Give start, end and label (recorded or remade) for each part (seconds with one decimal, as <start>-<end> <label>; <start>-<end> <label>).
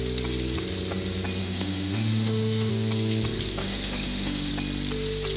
0.0-1.4 recorded; 1.4-2.7 remade; 2.7-3.6 recorded; 3.6-4.5 remade; 4.5-5.4 recorded